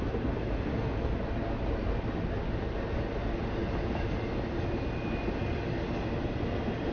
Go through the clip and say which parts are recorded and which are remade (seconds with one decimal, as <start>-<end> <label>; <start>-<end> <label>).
0.0-6.9 recorded